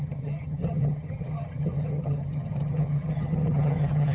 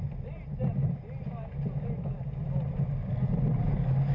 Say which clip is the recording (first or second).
second